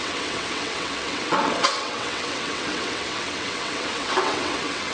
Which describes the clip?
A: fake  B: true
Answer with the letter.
A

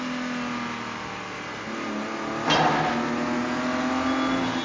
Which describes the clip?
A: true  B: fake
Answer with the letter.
A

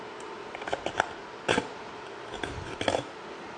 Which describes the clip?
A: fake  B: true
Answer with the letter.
B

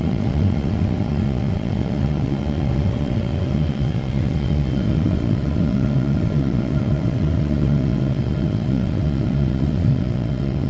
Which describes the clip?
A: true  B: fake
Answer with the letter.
B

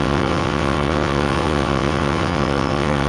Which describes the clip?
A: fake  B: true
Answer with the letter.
A